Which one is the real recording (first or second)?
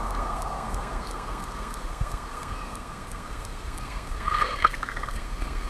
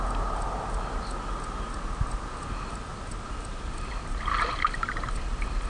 second